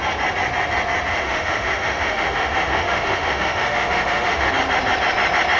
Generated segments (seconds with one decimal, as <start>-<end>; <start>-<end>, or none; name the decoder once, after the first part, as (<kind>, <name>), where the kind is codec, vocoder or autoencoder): 1.1-4.5 (autoencoder, DAC-VAE)